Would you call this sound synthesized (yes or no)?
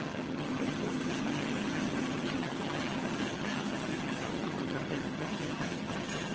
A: yes